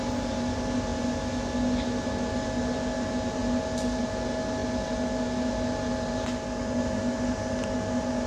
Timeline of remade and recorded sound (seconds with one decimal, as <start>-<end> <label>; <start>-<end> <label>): 0.0-8.3 recorded